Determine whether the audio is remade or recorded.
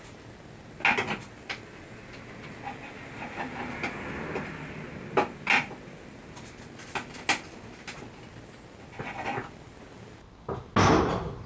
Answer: recorded